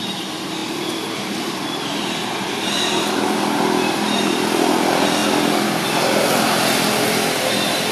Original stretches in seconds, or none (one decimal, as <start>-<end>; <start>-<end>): 5.2-6.2

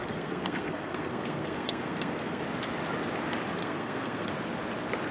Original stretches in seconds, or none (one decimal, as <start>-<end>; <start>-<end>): 2.4-3.6; 4.3-5.1

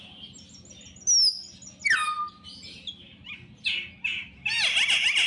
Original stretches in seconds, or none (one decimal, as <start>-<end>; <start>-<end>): 0.0-5.3

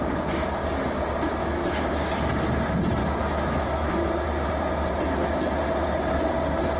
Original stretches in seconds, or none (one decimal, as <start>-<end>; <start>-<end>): 0.0-1.4; 1.9-3.0; 3.9-6.8

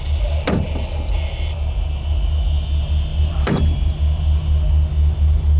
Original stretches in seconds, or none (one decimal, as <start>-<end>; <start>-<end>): 0.0-3.1; 3.9-5.6

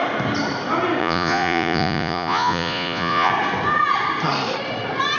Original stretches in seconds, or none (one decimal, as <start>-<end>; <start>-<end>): 0.0-1.0; 3.3-5.2